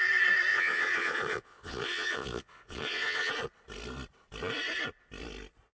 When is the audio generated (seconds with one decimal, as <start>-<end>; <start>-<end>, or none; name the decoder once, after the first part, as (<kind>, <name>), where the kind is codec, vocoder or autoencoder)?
0.5-3.3 (vocoder, Vocos)